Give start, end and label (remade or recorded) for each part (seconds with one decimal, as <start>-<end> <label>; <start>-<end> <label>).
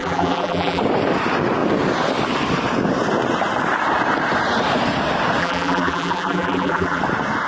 0.0-0.8 remade; 0.8-5.4 recorded; 5.4-7.0 remade; 7.0-7.5 recorded